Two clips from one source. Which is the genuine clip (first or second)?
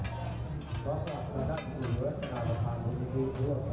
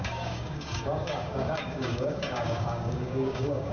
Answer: first